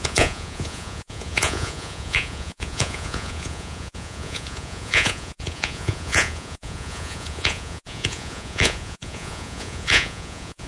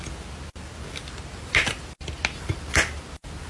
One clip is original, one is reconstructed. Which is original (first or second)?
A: second